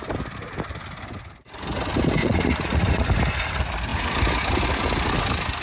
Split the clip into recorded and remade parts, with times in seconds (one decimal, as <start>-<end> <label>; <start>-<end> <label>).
0.0-2.2 recorded; 2.2-3.1 remade; 3.1-5.6 recorded